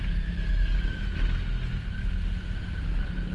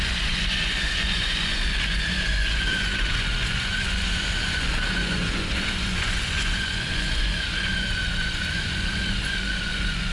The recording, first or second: first